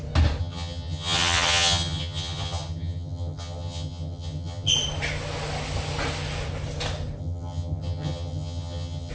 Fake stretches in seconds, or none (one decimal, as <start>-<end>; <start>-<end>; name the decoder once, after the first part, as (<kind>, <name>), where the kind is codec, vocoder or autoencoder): 0.4-4.7 (vocoder, HiFi-GAN); 7.2-9.1

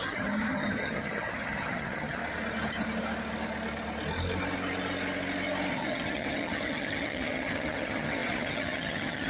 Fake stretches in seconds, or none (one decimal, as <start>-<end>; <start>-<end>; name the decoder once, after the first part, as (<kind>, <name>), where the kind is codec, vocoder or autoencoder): 0.0-2.2 (vocoder, HiFi-GAN); 5.7-9.3

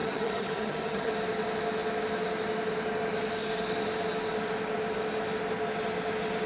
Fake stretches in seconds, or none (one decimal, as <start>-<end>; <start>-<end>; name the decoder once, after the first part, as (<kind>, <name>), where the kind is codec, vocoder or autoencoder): 0.0-1.1 (vocoder, HiFi-GAN)